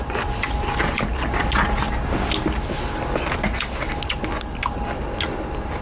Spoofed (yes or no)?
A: no